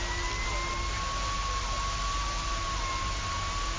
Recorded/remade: recorded